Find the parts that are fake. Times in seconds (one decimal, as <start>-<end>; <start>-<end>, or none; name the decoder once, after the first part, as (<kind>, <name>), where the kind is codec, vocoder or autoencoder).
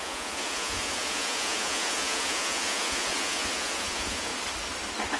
0.0-4.3 (vocoder, Vocos)